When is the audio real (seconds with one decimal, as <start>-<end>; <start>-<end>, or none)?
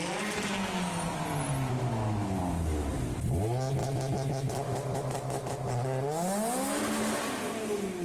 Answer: 0.0-1.7; 2.4-3.8; 5.7-8.0